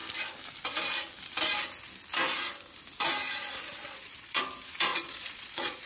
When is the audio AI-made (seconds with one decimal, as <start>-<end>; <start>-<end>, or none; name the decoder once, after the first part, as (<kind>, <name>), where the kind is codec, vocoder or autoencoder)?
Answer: 3.8-4.4 (vocoder, Vocos); 4.9-5.9